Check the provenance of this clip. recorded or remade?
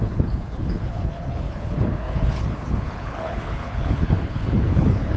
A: remade